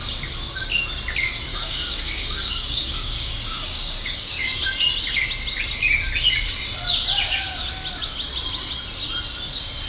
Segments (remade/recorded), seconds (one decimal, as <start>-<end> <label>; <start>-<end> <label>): 0.0-1.5 recorded; 1.5-4.6 remade; 4.6-9.9 recorded